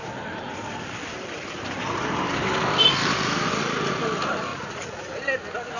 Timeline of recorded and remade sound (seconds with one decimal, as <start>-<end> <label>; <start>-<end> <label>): 0.0-4.5 recorded; 4.5-5.1 remade; 5.1-5.8 recorded